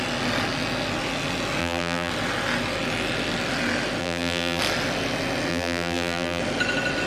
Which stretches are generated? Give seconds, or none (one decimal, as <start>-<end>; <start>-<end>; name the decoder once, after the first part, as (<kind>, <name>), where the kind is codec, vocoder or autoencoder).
1.6-2.1 (vocoder, BigVGAN v2); 4.0-4.6; 5.5-6.4